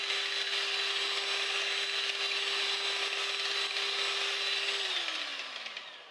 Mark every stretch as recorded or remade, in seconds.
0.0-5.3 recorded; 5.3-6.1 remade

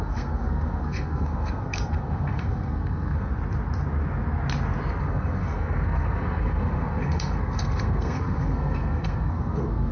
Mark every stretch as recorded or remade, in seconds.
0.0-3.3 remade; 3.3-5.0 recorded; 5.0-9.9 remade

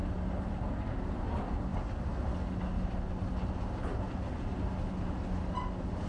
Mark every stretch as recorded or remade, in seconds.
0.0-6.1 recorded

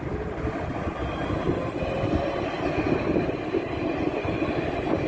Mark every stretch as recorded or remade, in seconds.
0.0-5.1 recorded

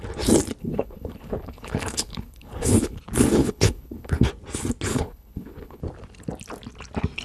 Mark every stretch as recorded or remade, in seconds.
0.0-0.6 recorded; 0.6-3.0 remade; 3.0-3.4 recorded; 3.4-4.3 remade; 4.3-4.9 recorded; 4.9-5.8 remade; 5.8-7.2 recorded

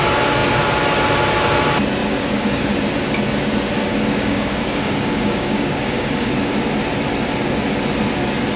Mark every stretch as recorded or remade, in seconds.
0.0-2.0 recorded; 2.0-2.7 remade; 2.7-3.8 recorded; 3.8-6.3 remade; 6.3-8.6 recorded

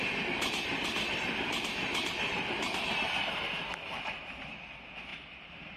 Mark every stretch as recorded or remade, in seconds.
0.0-0.7 recorded; 0.7-4.2 remade; 4.2-5.1 recorded; 5.1-5.8 remade